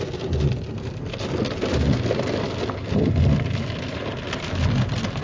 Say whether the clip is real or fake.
real